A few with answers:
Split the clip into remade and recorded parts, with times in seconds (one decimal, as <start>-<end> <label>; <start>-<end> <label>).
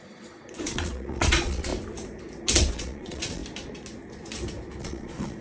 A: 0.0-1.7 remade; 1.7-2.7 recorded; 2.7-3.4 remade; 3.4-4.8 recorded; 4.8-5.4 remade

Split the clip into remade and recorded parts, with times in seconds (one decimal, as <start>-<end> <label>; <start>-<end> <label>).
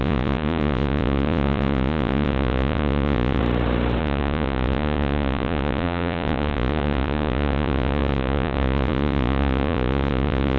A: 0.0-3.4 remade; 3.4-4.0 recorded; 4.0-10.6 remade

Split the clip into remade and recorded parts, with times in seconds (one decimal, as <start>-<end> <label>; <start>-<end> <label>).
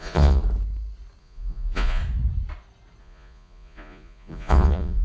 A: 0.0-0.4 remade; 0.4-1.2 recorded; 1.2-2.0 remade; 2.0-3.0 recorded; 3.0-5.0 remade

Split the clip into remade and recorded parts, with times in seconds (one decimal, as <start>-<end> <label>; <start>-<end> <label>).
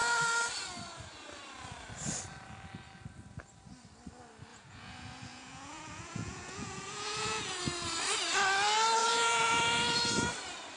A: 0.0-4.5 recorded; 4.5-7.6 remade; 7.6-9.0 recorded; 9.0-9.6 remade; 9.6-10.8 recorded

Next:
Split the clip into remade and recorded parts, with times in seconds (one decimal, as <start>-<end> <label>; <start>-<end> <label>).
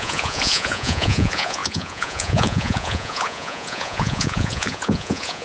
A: 0.0-5.4 remade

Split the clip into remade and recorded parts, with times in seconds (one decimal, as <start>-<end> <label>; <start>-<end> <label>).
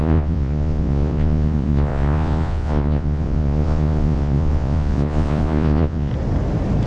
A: 0.0-6.1 remade; 6.1-6.9 recorded